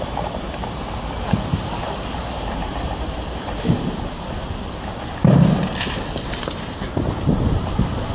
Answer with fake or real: fake